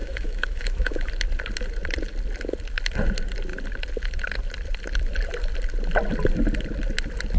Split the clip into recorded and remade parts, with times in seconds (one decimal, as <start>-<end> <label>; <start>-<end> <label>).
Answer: 0.0-1.1 remade; 1.1-7.4 recorded

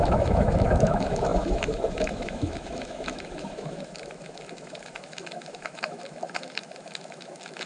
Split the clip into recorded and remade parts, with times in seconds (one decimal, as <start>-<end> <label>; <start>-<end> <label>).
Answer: 0.0-7.7 remade

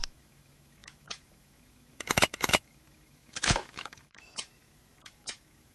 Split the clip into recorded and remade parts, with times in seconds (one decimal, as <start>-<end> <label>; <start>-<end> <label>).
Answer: 0.0-5.7 remade